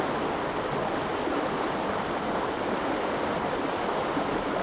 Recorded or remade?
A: recorded